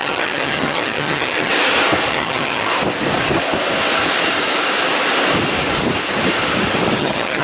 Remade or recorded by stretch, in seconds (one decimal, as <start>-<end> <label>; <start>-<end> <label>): 0.0-1.5 remade; 1.5-2.1 recorded; 2.1-2.7 remade; 2.7-7.0 recorded; 7.0-7.4 remade